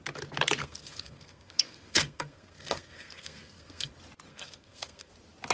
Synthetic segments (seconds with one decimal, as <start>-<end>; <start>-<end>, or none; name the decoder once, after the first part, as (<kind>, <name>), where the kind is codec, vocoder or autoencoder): 0.6-3.9 (codec, SNAC); 4.3-5.1